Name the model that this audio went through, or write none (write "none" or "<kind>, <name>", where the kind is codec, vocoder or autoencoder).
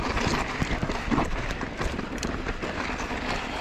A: vocoder, BigVGAN v2